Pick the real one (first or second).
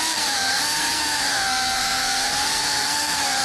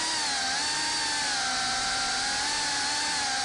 second